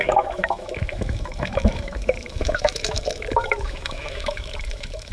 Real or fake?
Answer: fake